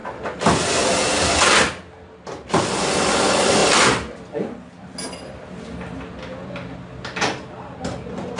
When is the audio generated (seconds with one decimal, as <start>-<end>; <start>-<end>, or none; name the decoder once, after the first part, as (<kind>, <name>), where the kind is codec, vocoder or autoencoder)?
none